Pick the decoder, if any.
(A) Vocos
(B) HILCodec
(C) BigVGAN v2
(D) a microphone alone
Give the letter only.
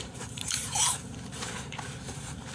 C